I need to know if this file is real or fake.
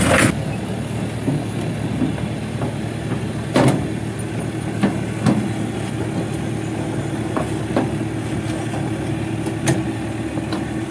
real